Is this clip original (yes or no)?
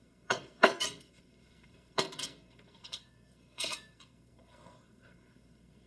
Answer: no